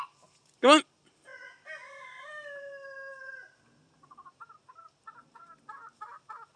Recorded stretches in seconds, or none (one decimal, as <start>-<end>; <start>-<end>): 0.0-6.6